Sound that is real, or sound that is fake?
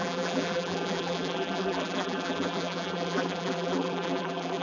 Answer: fake